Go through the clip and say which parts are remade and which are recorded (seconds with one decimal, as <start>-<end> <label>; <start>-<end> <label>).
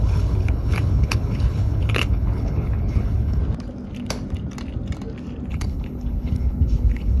0.0-3.4 remade; 3.4-5.5 recorded; 5.5-7.2 remade